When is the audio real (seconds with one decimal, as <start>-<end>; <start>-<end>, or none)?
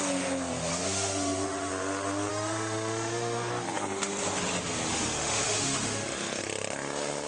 0.0-0.7; 1.7-2.3; 3.5-4.9; 6.4-7.3